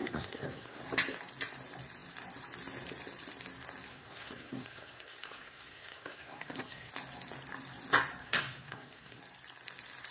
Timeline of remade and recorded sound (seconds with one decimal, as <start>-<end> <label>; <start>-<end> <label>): 0.0-0.8 remade; 0.8-3.9 recorded; 3.9-6.9 remade; 6.9-8.2 recorded; 8.2-9.2 remade; 9.2-10.1 recorded